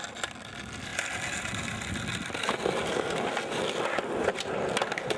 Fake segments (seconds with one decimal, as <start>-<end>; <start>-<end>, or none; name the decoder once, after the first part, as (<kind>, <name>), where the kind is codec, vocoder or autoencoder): none